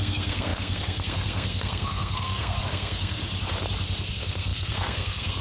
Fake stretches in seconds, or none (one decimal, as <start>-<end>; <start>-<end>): 0.0-3.2; 4.1-5.4